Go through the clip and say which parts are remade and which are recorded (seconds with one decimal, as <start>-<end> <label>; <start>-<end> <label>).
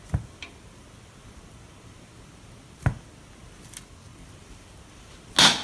0.0-5.6 recorded